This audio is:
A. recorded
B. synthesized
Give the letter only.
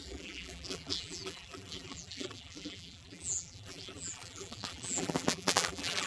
B